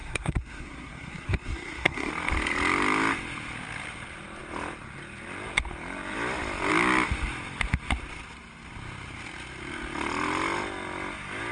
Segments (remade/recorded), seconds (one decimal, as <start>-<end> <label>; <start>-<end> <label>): 0.0-2.1 remade; 2.1-11.5 recorded